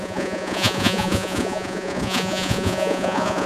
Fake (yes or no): yes